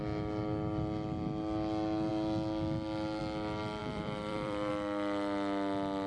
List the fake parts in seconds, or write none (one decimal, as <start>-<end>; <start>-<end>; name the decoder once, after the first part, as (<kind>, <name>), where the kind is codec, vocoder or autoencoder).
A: 3.8-4.7 (vocoder, BigVGAN v2)